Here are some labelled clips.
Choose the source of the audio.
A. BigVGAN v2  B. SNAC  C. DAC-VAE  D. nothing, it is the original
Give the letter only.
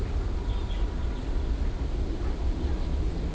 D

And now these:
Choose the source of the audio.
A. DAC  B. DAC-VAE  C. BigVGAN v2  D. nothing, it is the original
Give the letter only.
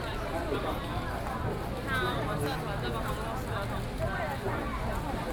D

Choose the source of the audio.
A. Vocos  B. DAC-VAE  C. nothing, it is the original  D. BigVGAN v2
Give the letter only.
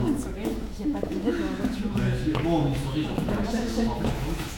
B